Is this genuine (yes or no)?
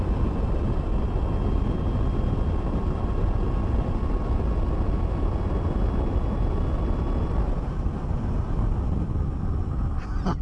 yes